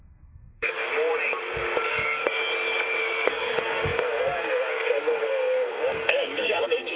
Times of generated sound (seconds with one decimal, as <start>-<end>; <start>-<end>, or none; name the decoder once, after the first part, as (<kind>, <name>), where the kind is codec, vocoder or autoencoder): 0.0-0.9 (codec, SNAC); 1.9-2.4; 3.0-7.0